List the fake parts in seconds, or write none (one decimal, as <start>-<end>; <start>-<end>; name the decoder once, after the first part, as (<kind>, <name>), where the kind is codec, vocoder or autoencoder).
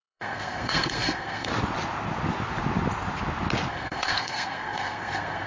0.0-1.5 (codec, SNAC); 3.7-5.5